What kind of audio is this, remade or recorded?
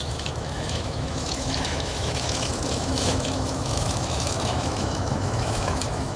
remade